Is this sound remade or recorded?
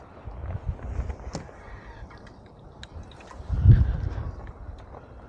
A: recorded